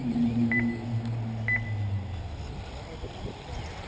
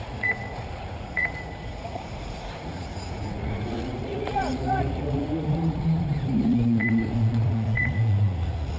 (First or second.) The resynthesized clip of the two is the second